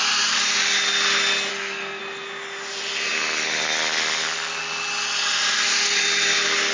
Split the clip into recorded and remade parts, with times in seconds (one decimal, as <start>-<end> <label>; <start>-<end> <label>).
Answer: 0.0-1.5 recorded; 1.5-2.0 remade; 2.0-6.7 recorded

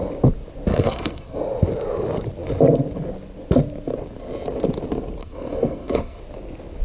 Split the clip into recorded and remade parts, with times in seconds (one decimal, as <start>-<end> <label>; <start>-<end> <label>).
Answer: 0.0-0.7 recorded; 0.7-1.4 remade; 1.4-5.2 recorded; 5.2-6.2 remade; 6.2-6.8 recorded

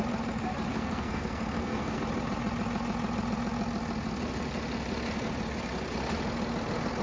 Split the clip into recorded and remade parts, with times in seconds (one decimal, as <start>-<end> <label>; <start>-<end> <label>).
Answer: 0.0-0.7 recorded; 0.7-2.0 remade; 2.0-7.0 recorded

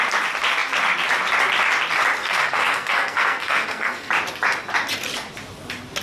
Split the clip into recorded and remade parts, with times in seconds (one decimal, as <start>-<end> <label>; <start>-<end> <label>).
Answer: 0.0-2.2 recorded; 2.2-4.1 remade; 4.1-6.0 recorded

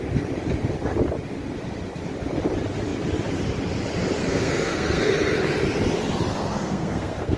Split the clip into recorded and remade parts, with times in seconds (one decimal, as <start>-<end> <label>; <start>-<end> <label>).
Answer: 0.0-4.2 recorded; 4.2-5.1 remade; 5.1-6.3 recorded; 6.3-7.4 remade

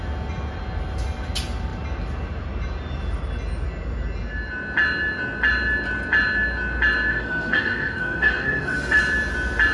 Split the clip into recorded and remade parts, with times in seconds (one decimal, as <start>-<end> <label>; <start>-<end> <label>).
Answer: 0.0-7.1 recorded; 7.1-9.0 remade; 9.0-9.7 recorded

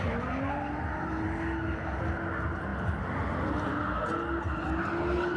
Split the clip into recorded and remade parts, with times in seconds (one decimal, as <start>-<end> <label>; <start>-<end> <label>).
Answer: 0.0-5.4 recorded